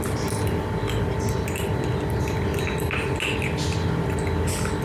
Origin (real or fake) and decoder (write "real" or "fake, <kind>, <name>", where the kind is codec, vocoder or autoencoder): real